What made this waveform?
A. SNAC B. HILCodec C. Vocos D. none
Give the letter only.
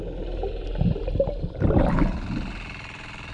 D